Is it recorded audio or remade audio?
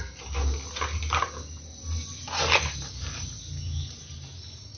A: recorded